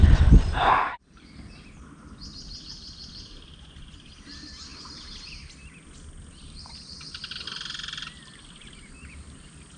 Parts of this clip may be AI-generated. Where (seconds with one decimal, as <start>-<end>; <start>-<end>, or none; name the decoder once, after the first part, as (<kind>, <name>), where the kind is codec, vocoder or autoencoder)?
none

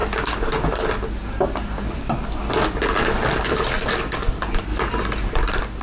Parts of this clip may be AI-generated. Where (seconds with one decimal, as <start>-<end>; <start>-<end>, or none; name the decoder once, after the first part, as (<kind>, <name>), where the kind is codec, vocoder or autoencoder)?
3.5-4.7 (vocoder, BigVGAN v2); 5.3-5.8

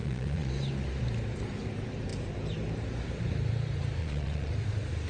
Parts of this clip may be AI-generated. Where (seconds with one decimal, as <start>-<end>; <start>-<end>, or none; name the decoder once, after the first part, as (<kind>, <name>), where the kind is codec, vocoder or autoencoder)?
0.0-0.5 (vocoder, Vocos); 4.0-4.5

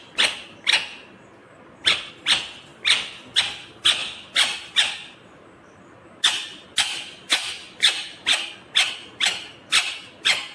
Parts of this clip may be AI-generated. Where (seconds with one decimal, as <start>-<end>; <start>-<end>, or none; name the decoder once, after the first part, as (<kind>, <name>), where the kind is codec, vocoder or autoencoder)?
1.4-2.1 (vocoder, BigVGAN v2); 4.0-8.5

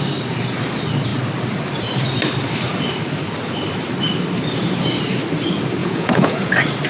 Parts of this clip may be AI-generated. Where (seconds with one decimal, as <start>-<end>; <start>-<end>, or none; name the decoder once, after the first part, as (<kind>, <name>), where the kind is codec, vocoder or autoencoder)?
5.8-6.5 (vocoder, Vocos)